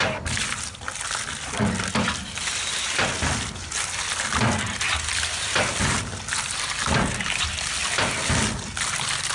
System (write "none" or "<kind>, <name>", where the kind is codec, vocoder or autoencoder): none